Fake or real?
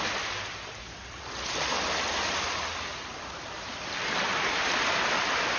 fake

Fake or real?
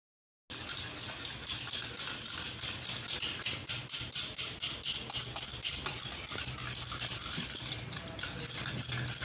real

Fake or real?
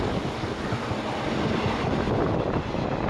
real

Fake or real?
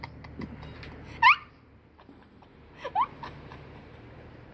real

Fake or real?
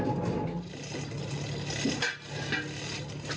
real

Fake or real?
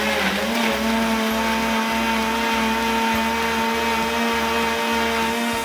real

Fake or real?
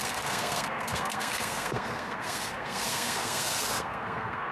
fake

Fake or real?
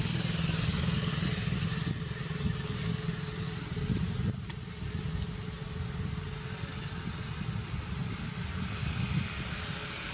real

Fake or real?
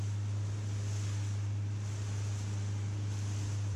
real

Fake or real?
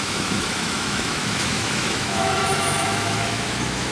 fake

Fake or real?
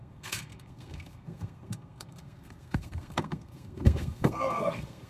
fake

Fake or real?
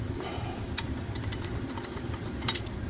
fake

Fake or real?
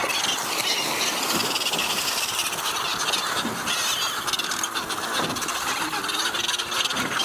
real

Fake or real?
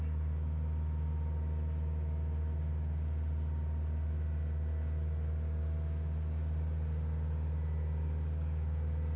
real